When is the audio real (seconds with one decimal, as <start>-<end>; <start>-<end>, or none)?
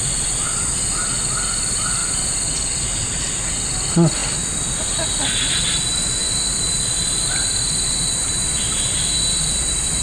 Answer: 0.0-10.0